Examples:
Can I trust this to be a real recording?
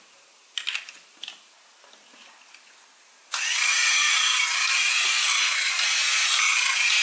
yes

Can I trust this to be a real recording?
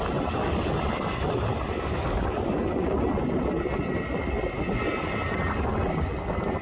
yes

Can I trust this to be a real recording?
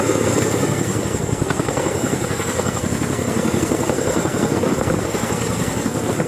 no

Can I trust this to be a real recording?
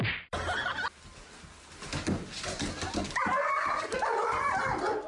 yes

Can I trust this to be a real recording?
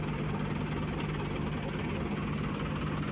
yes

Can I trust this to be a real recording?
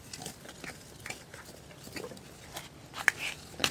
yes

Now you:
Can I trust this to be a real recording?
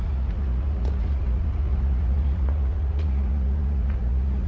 no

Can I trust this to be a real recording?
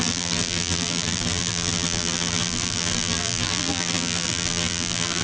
no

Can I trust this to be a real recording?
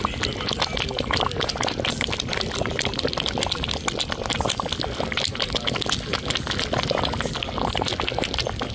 yes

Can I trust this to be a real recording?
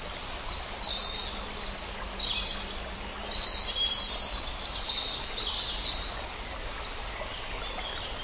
yes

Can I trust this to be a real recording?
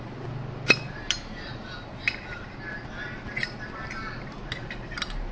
yes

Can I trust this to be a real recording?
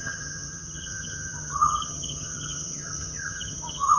no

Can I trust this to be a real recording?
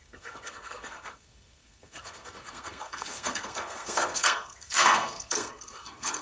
no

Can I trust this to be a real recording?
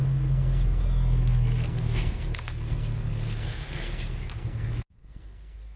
no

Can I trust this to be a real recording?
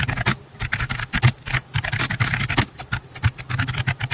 yes